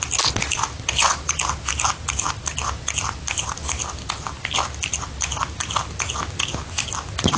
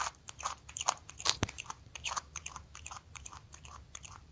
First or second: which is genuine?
first